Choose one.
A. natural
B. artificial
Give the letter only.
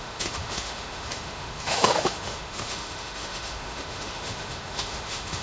B